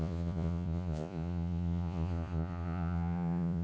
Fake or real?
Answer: fake